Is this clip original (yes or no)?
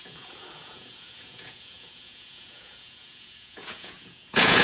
no